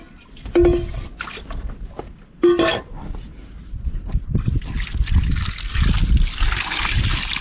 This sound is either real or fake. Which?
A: real